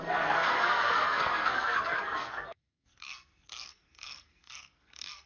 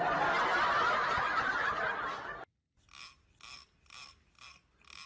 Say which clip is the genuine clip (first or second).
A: second